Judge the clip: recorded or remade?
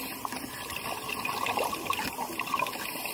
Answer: recorded